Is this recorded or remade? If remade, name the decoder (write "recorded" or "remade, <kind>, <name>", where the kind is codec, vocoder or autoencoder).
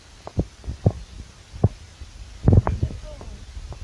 recorded